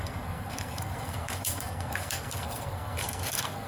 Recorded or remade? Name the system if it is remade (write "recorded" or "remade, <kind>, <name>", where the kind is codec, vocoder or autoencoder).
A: remade, codec, SNAC